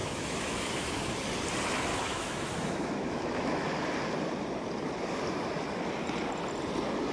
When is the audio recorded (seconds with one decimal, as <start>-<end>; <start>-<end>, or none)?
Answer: 1.1-1.9; 3.7-7.1